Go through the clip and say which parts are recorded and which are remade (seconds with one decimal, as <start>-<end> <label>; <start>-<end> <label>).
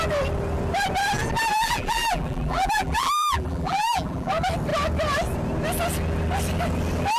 0.0-1.5 recorded; 1.5-4.3 remade; 4.3-7.2 recorded